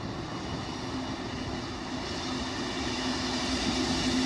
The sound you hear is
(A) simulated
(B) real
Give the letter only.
B